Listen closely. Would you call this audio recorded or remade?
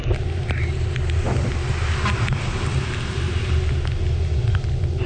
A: recorded